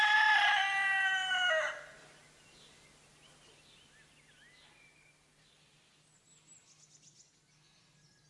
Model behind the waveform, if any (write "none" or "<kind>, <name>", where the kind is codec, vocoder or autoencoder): none